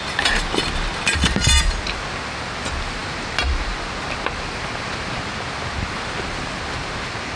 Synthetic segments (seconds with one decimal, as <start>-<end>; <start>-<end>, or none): none